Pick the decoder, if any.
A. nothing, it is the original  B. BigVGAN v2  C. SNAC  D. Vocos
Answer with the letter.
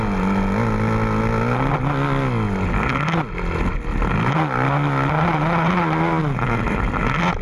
A